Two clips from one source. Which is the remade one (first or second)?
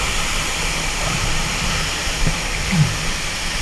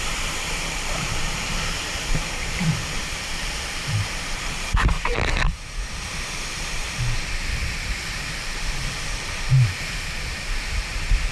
second